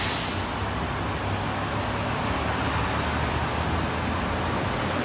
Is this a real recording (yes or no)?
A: yes